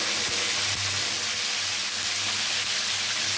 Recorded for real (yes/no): yes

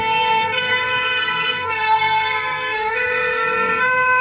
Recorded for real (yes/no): no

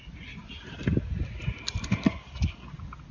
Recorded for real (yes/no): yes